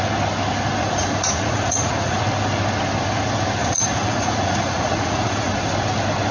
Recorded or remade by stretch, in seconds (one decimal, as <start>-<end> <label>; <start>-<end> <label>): 0.0-0.8 recorded; 0.8-2.2 remade; 2.2-3.6 recorded; 3.6-5.5 remade; 5.5-6.3 recorded